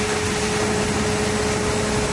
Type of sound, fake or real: real